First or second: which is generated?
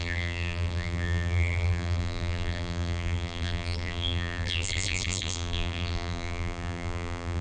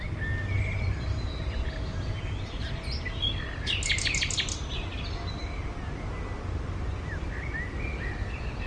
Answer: first